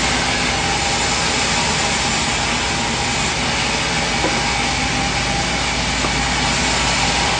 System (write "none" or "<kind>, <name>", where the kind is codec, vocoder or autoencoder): none